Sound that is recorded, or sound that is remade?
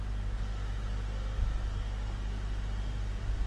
recorded